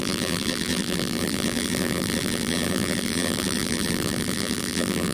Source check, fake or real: fake